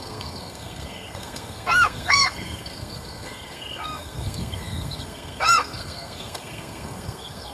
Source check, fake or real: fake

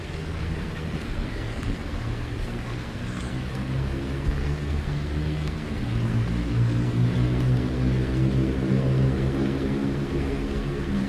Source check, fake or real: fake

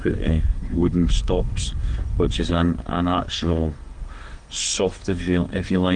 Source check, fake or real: fake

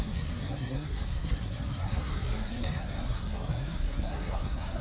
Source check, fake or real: fake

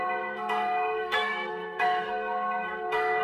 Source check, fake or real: fake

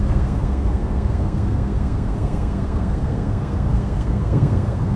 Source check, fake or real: fake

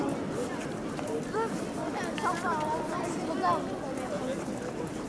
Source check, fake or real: real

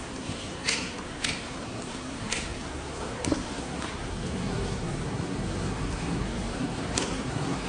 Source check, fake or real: fake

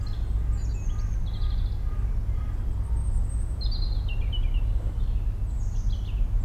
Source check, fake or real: real